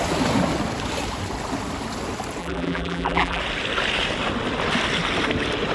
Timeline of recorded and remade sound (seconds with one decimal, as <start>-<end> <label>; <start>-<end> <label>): 0.0-2.4 recorded; 2.4-3.4 remade; 3.4-5.7 recorded